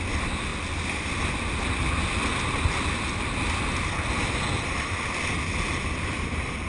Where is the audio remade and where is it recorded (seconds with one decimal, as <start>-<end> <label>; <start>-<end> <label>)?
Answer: 0.0-6.7 recorded